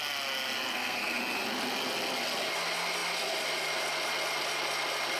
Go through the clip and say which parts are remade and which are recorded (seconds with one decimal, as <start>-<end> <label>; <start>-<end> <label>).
0.0-0.7 recorded; 0.7-1.2 remade; 1.2-5.2 recorded